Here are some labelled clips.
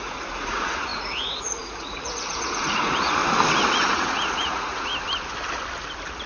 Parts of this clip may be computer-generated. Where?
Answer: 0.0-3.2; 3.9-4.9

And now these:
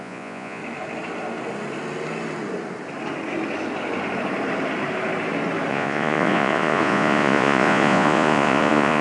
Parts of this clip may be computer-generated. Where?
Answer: 0.0-0.6; 5.7-9.0

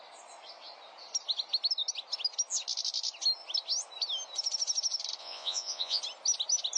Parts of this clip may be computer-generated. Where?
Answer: 5.2-6.0

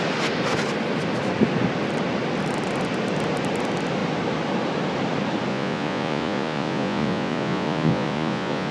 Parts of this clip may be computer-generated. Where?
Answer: 5.5-8.7

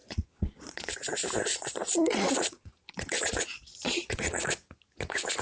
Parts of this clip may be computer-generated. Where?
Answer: 0.0-0.9; 1.5-4.7

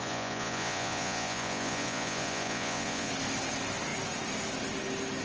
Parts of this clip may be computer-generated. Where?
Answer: 0.0-3.1